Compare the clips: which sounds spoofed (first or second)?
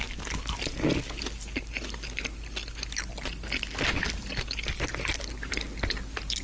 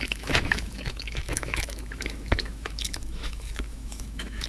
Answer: second